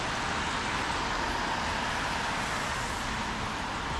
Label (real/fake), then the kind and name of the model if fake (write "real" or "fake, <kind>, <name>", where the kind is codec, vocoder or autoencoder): real